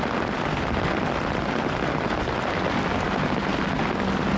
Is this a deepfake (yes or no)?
no